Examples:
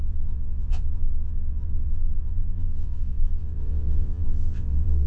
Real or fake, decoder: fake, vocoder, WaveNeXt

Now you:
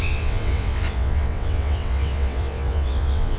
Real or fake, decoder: fake, vocoder, WaveNeXt